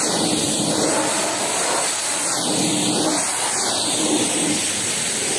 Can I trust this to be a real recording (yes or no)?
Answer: yes